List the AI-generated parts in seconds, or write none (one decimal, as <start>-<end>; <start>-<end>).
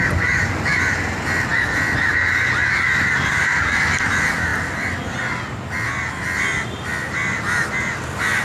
none